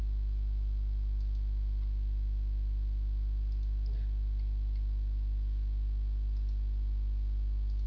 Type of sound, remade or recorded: recorded